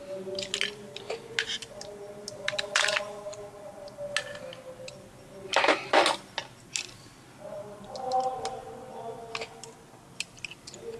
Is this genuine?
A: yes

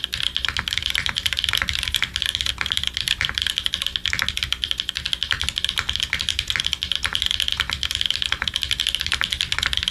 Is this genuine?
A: yes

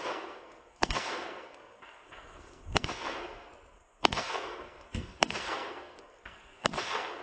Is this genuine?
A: no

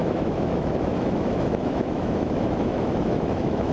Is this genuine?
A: no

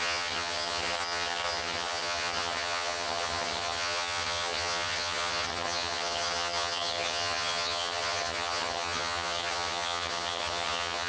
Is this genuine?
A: no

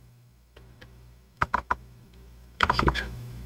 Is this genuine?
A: no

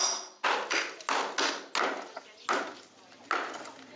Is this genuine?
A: yes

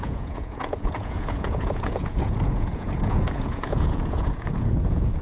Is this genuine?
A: no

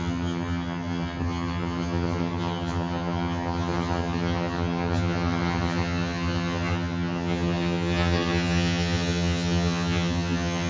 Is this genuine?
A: no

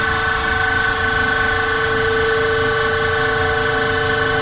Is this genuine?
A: yes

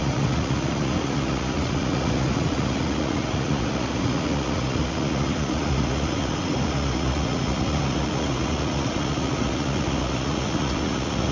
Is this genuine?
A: no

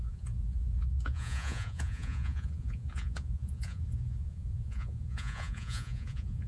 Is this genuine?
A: no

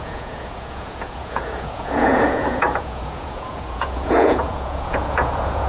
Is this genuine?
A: no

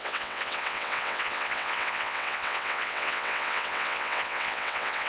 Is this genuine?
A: no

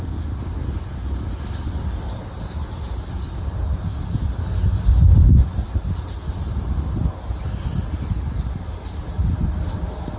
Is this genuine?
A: yes